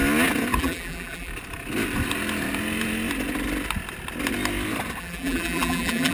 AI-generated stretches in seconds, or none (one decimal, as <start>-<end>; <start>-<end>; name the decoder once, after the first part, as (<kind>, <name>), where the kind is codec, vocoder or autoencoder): 0.6-1.3 (vocoder, BigVGAN v2); 5.0-6.1